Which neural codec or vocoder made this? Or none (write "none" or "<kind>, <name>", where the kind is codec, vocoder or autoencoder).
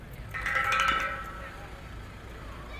none